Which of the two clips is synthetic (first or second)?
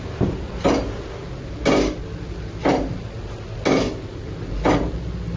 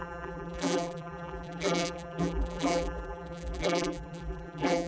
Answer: second